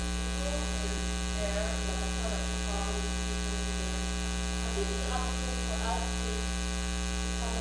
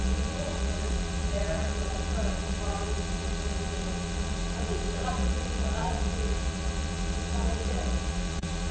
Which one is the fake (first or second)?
second